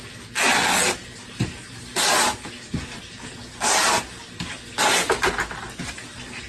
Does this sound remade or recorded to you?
recorded